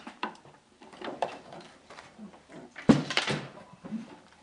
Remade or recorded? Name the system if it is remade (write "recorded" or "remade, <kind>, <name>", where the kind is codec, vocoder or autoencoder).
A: remade, vocoder, BigVGAN v2